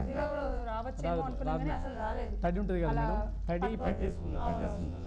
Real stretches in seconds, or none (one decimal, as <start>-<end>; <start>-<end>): 0.6-1.7; 2.3-3.8